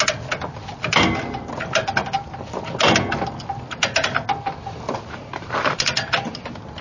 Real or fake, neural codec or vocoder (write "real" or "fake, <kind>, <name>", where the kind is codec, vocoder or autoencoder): real